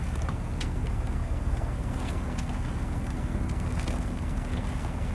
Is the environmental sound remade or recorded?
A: remade